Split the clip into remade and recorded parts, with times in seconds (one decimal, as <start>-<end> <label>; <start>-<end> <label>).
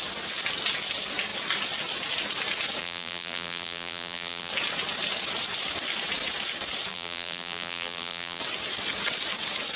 0.0-2.8 recorded; 2.8-4.5 remade; 4.5-6.9 recorded; 6.9-8.4 remade; 8.4-9.8 recorded